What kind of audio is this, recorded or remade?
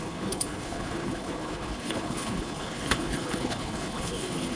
remade